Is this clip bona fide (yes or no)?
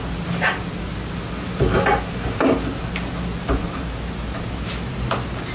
yes